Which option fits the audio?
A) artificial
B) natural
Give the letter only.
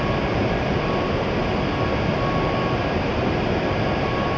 B